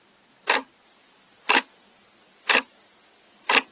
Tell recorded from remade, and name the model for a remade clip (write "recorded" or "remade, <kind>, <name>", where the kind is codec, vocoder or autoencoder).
recorded